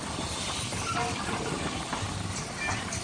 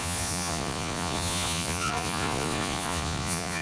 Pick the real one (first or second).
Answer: first